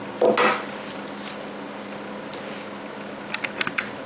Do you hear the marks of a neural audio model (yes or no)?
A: no